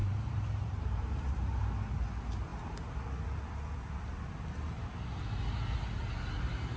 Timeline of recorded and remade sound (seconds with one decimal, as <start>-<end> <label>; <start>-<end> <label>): 0.0-1.6 remade; 1.6-6.8 recorded

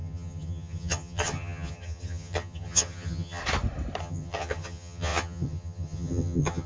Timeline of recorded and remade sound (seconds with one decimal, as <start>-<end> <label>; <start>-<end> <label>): 0.0-3.4 remade; 3.4-4.0 recorded; 4.0-6.7 remade